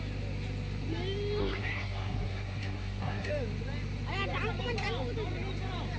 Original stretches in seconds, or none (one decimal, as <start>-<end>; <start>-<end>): 0.0-1.4; 3.3-6.0